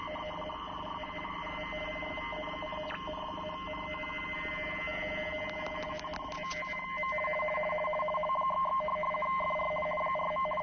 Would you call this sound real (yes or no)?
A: yes